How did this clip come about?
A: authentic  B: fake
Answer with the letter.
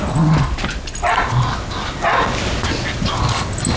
A